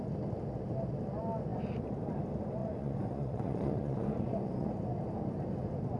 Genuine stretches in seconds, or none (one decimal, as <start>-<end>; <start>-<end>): 0.0-2.6; 4.7-6.0